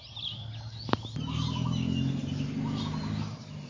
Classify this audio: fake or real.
real